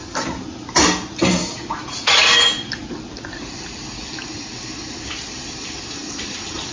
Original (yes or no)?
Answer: yes